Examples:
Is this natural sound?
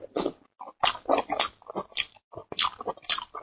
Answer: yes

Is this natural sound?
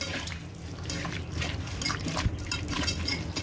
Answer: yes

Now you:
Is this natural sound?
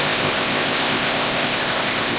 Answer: no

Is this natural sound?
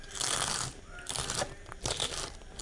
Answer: yes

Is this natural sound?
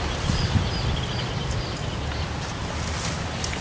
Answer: yes